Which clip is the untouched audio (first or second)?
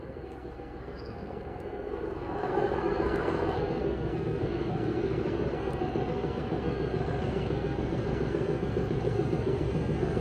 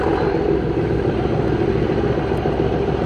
second